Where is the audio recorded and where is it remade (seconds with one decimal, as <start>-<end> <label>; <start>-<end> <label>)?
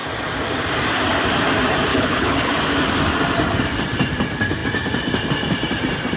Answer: 0.0-1.9 recorded; 1.9-2.5 remade; 2.5-6.2 recorded